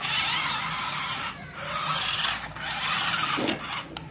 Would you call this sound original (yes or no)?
yes